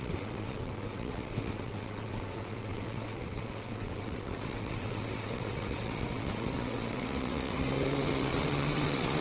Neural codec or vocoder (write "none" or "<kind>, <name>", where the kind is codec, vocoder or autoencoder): vocoder, WaveNeXt